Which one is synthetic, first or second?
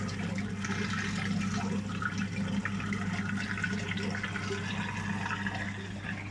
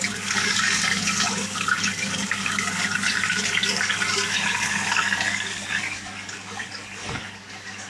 second